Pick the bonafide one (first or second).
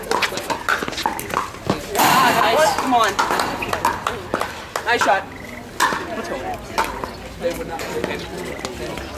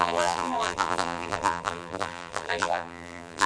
first